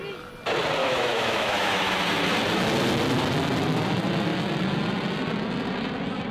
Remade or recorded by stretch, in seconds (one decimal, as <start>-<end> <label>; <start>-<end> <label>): 0.0-0.8 recorded; 0.8-2.0 remade; 2.0-6.3 recorded